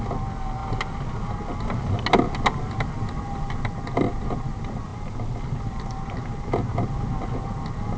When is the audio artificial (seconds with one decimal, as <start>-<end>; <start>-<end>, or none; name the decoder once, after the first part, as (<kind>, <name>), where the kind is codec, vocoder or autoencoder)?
none